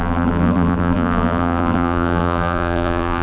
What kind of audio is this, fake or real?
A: fake